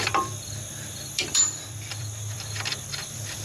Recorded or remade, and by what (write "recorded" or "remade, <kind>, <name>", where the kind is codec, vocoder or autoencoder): remade, vocoder, BigVGAN v2